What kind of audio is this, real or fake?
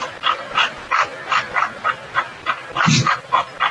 real